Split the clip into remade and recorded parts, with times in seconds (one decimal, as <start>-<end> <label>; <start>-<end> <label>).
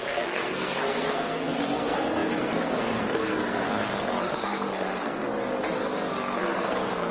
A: 0.0-5.2 remade; 5.2-6.1 recorded; 6.1-7.1 remade